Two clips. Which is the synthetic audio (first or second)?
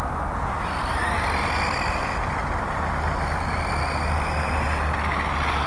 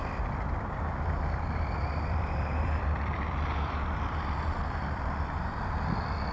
second